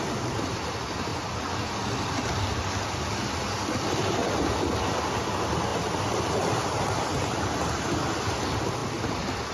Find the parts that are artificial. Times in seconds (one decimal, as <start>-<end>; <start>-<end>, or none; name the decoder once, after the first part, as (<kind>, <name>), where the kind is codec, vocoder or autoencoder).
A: none